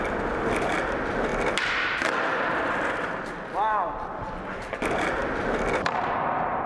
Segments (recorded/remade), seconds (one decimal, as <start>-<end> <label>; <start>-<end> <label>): 0.0-1.3 recorded; 1.3-3.2 remade; 3.2-6.7 recorded